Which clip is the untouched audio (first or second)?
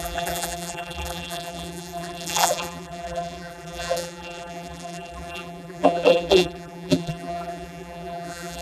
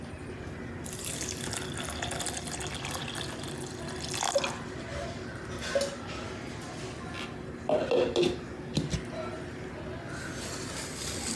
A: second